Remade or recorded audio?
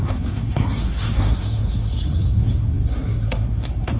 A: remade